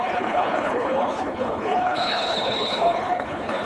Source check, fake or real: fake